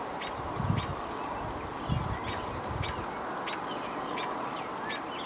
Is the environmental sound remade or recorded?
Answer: recorded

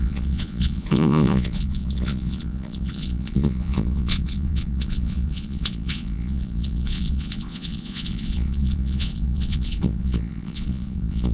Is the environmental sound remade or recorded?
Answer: remade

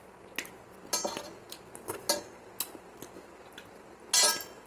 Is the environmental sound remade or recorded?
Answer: recorded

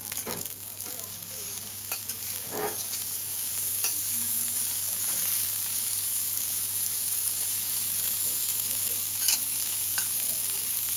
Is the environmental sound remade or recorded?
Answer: remade